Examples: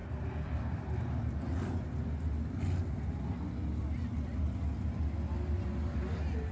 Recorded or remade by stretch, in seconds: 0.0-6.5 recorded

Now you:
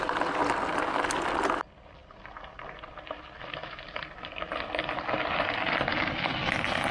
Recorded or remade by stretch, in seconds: 0.0-2.0 recorded; 2.0-6.1 remade; 6.1-6.9 recorded

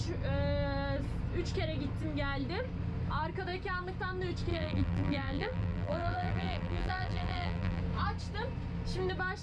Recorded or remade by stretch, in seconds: 0.0-4.5 recorded; 4.5-7.8 remade; 7.8-9.4 recorded